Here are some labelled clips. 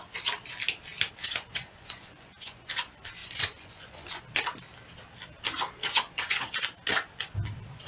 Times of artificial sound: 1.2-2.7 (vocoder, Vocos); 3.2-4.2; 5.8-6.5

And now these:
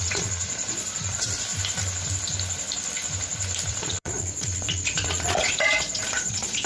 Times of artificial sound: 0.0-1.5 (vocoder, Vocos); 3.7-6.7

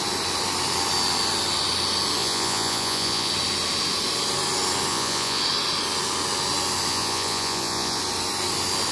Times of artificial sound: 2.2-3.3 (vocoder, Vocos); 4.9-5.4; 6.9-8.0

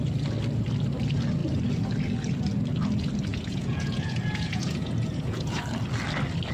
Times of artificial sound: 3.3-5.6 (vocoder, Vocos)

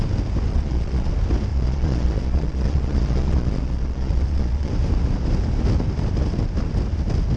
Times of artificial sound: 0.5-1.1 (vocoder, Vocos); 1.5-4.7